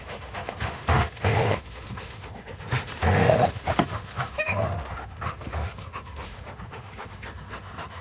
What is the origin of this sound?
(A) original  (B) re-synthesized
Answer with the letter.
B